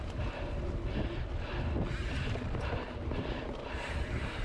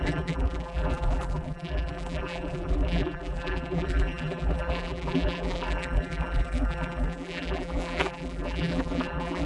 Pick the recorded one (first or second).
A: first